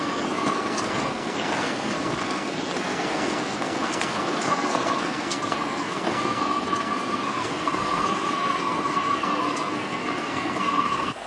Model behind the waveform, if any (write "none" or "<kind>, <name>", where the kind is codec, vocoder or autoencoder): codec, SNAC